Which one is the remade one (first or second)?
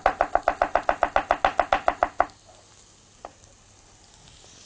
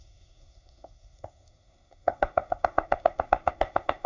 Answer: second